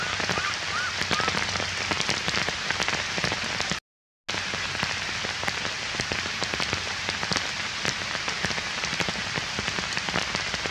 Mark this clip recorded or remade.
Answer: recorded